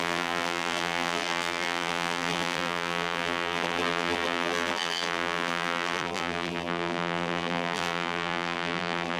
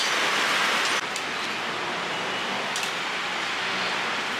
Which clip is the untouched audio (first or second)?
second